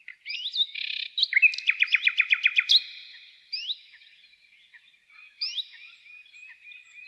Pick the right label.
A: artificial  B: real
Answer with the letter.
B